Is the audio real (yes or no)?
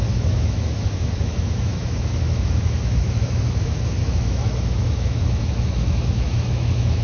no